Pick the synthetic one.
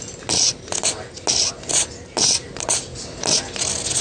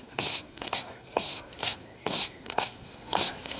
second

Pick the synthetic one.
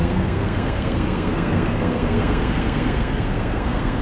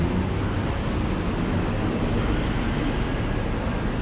first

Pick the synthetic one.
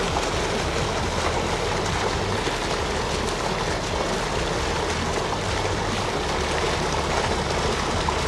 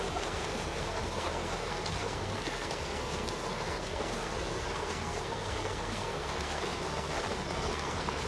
second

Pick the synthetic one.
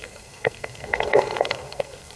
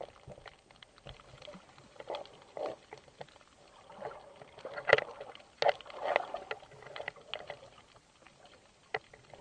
first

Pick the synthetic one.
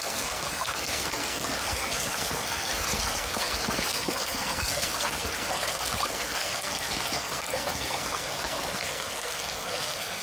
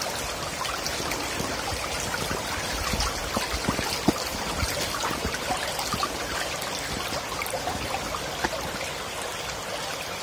first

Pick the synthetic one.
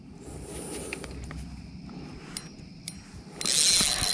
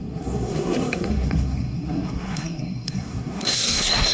second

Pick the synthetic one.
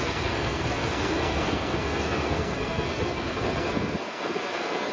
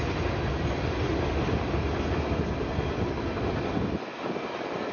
first